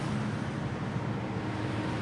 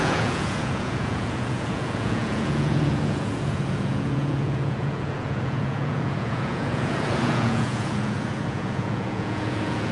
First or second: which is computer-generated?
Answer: second